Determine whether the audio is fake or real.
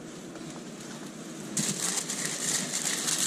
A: real